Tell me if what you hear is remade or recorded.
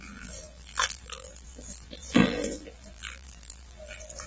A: remade